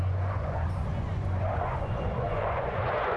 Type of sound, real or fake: fake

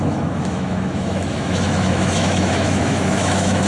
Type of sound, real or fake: fake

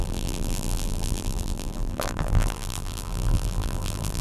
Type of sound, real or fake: fake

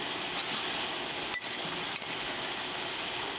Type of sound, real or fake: real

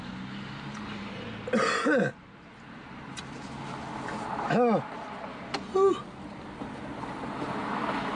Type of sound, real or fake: real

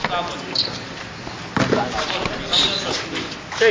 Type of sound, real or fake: real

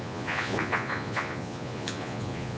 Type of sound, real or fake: fake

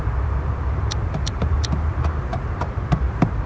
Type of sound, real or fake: fake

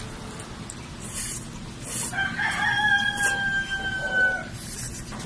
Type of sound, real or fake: real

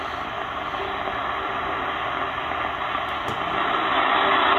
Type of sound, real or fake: real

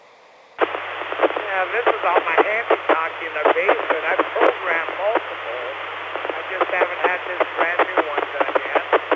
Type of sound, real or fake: real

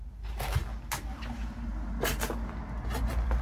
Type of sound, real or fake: real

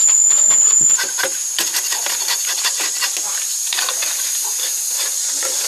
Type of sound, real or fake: fake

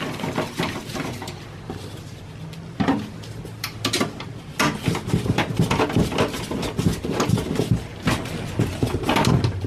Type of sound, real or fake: real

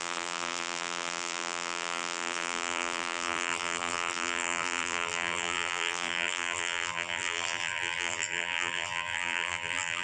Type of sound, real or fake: fake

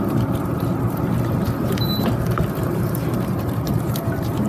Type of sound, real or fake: fake